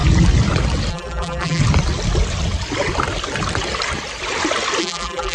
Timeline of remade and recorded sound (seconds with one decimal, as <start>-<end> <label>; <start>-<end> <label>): 0.0-0.9 recorded; 0.9-1.6 remade; 1.6-4.8 recorded; 4.8-5.3 remade